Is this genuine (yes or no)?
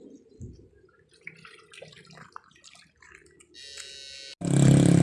yes